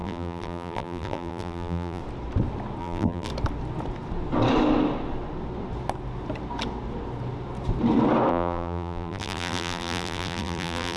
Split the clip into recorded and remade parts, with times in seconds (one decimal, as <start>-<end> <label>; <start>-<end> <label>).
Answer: 0.0-2.0 remade; 2.0-2.8 recorded; 2.8-3.3 remade; 3.3-8.3 recorded; 8.3-11.0 remade